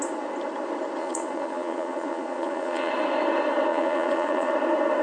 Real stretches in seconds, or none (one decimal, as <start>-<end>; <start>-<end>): 0.0-1.0; 2.9-3.7; 4.5-5.0

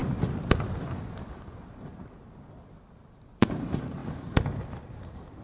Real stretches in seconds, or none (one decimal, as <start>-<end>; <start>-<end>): 0.0-3.2; 4.0-5.4

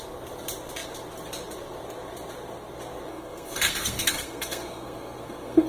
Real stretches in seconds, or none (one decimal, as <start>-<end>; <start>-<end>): 0.0-3.1

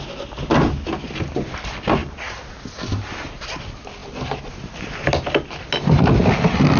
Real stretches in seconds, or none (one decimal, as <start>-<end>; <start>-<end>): 0.0-6.8

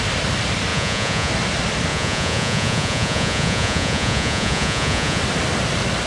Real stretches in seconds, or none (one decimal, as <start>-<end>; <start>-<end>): 0.0-0.7; 1.3-1.9; 5.2-6.1

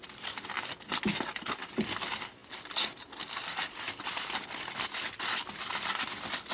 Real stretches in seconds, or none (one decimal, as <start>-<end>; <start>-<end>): 0.0-6.5